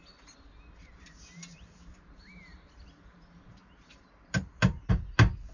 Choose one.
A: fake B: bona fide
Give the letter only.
B